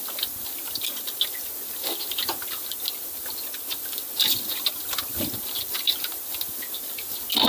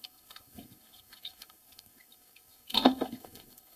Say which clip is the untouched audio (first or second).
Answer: first